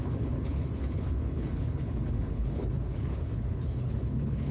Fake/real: fake